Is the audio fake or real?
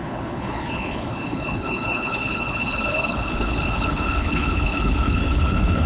fake